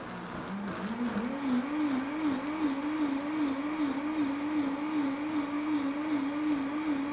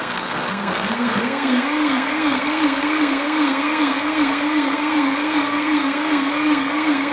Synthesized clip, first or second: second